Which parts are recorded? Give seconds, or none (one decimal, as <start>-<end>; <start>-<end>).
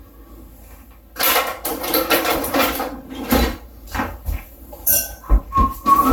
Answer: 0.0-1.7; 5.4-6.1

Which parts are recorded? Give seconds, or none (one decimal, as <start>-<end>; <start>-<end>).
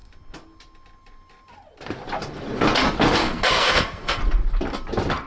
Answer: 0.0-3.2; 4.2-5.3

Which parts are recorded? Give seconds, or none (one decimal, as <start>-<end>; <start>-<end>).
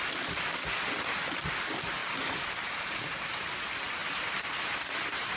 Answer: 0.0-2.0; 3.2-5.4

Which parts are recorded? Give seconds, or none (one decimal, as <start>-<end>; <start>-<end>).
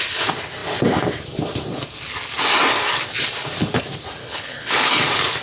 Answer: 0.0-4.2; 5.0-5.4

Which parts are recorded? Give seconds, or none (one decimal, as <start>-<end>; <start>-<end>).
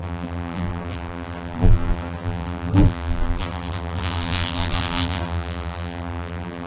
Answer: none